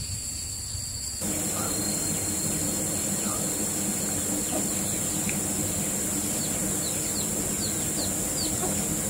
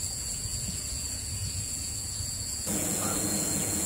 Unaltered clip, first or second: first